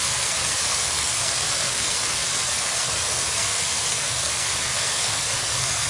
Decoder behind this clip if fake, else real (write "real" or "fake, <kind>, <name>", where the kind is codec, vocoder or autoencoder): fake, codec, SNAC